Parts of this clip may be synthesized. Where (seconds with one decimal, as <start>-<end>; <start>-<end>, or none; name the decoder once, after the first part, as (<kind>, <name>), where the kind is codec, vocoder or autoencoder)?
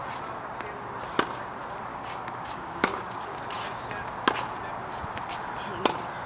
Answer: 1.9-3.4 (codec, DAC)